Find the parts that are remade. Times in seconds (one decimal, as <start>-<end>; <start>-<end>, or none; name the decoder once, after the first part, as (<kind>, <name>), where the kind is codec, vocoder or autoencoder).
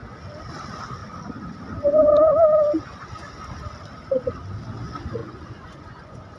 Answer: 5.2-6.4 (vocoder, Vocos)